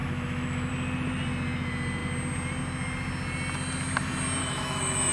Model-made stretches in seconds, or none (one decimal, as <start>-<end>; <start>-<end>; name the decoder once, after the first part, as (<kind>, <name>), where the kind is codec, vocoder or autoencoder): 0.0-0.7 (autoencoder, DAC-VAE); 4.4-5.1